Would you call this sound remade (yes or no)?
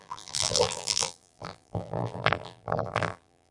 yes